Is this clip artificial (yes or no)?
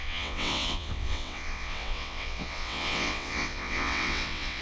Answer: yes